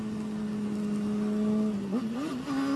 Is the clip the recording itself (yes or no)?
yes